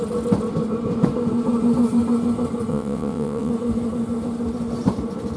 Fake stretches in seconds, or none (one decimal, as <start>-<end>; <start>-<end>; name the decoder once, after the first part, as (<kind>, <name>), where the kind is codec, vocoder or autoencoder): 2.7-3.5 (vocoder, WaveNeXt)